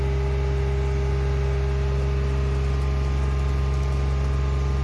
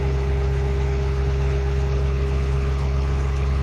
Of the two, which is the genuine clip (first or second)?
first